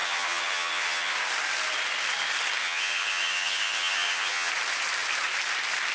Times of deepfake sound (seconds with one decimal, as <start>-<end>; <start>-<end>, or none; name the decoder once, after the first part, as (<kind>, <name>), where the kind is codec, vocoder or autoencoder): 0.0-1.1 (vocoder, HiFi-GAN); 2.6-4.5